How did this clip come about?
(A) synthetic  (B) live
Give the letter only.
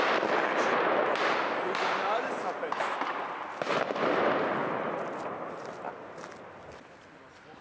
B